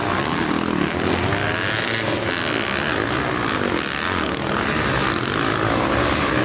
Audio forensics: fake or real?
real